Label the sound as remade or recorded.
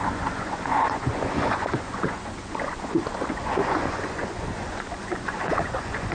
remade